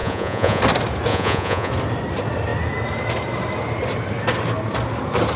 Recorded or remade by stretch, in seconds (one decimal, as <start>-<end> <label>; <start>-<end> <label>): 0.0-0.6 remade; 0.6-1.1 recorded; 1.1-1.7 remade; 1.7-5.4 recorded